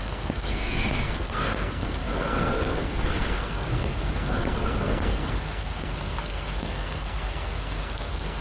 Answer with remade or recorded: remade